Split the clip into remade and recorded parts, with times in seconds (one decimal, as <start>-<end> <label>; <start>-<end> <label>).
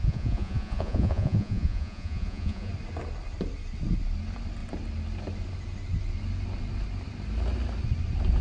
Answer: 0.0-2.7 remade; 2.7-8.4 recorded